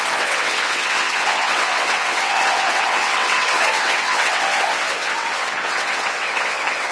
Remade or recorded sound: remade